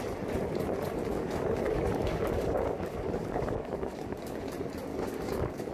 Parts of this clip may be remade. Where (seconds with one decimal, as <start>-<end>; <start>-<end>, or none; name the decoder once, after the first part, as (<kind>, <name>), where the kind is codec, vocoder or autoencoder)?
1.1-4.5 (codec, DAC); 4.9-5.7

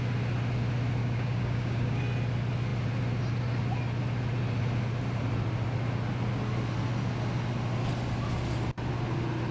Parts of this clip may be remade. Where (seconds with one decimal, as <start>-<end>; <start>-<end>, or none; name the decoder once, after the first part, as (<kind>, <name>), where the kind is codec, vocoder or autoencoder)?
1.0-2.0 (codec, DAC)